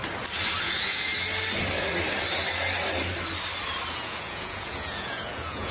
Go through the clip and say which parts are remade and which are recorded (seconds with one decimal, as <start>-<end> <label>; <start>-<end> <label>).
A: 0.0-0.6 recorded; 0.6-1.1 remade; 1.1-3.9 recorded; 3.9-5.7 remade